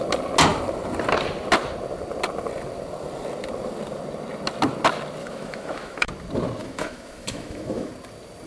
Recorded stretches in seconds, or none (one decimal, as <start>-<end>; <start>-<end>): 0.0-5.2; 6.1-6.6; 7.9-8.5